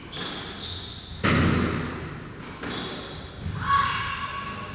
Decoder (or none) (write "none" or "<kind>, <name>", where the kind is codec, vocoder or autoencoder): none